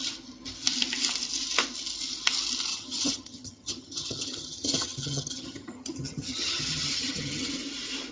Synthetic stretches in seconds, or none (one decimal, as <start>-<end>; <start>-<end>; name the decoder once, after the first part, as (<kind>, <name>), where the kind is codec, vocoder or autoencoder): 2.7-7.5 (vocoder, HiFi-GAN)